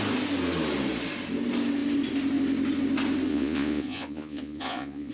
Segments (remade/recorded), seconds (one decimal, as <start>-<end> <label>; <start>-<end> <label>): 0.0-3.3 recorded; 3.3-5.1 remade